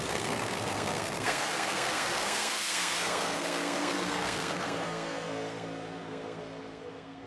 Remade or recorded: remade